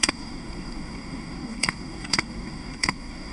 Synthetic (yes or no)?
yes